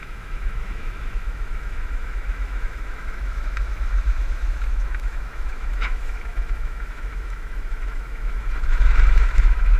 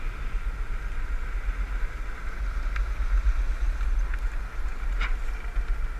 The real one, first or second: second